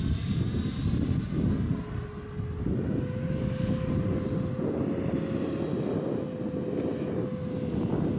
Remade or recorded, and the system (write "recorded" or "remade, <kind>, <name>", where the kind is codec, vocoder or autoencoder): recorded